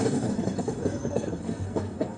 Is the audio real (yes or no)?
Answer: no